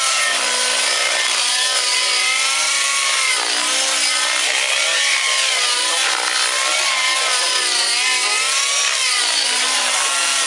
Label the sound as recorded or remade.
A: recorded